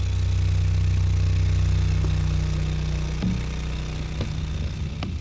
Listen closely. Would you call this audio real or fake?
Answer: real